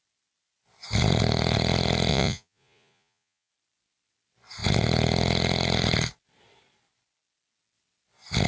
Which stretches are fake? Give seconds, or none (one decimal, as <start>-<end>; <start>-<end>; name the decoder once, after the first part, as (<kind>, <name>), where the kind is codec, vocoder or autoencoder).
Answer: 2.1-3.5 (vocoder, Vocos)